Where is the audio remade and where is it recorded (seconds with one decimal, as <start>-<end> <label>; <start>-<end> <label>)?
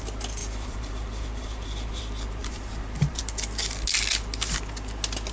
0.0-0.4 recorded; 0.4-2.0 remade; 2.0-2.4 recorded; 2.4-3.2 remade; 3.2-5.3 recorded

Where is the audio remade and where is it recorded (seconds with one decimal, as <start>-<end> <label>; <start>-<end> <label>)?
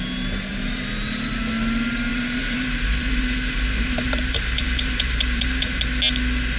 0.0-0.5 recorded; 0.5-1.4 remade; 1.4-2.1 recorded; 2.1-5.8 remade; 5.8-6.6 recorded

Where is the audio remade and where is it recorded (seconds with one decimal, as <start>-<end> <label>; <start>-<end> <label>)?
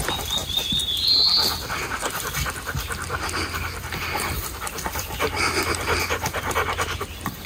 0.0-0.4 recorded; 0.4-4.7 remade; 4.7-7.5 recorded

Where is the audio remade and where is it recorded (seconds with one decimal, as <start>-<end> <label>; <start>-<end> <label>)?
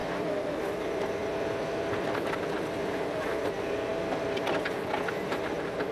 0.0-0.6 recorded; 0.6-1.2 remade; 1.2-1.8 recorded; 1.8-5.9 remade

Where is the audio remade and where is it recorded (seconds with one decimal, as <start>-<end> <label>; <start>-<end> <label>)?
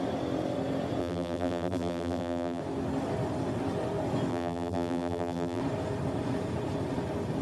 0.0-1.0 recorded; 1.0-2.6 remade; 2.6-4.3 recorded; 4.3-5.6 remade; 5.6-7.4 recorded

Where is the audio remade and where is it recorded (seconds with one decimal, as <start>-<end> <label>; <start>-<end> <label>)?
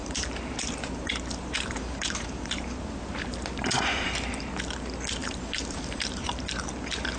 0.0-4.3 remade; 4.3-5.2 recorded; 5.2-6.7 remade; 6.7-7.2 recorded